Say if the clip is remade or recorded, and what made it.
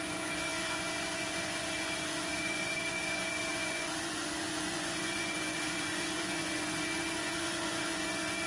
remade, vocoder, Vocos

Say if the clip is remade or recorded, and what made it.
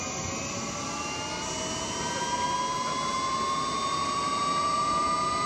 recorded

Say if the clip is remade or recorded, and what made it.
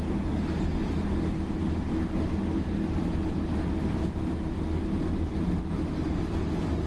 recorded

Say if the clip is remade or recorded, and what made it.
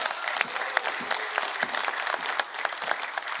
recorded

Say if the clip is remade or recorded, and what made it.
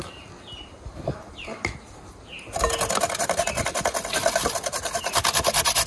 recorded